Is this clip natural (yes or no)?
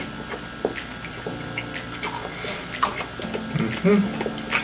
yes